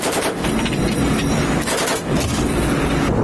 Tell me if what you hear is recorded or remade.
recorded